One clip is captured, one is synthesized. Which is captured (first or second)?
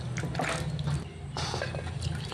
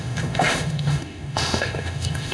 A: first